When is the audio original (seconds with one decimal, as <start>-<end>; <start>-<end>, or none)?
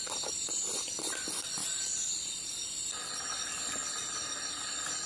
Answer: 0.0-1.6; 2.7-5.1